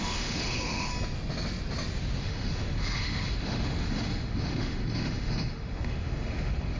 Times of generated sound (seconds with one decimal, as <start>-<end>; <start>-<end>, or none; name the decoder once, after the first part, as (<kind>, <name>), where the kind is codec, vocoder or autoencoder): 0.0-0.9 (autoencoder, DAC-VAE); 2.2-6.8